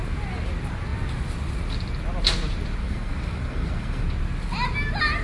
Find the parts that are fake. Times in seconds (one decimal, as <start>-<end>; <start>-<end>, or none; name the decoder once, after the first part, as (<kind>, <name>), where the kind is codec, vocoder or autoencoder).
2.8-4.0 (codec, SNAC)